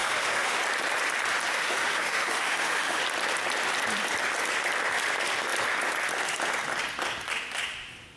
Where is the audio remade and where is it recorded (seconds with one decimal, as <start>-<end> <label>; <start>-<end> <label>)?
0.0-0.6 remade; 0.6-1.5 recorded; 1.5-3.0 remade; 3.0-8.2 recorded